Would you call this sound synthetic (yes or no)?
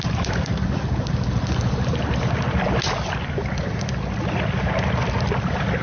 no